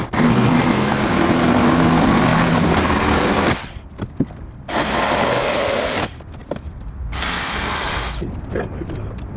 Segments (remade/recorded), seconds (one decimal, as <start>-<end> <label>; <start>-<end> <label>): 0.0-9.4 recorded